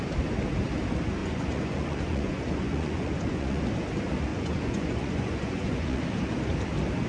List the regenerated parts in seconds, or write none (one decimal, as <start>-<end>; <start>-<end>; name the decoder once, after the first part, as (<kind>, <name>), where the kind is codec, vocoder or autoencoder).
1.2-3.6 (vocoder, Vocos); 4.3-6.1